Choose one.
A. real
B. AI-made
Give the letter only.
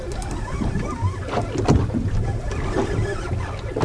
A